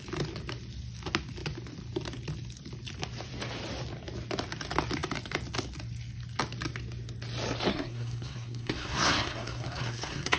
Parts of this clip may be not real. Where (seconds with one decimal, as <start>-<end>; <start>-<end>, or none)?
7.7-10.4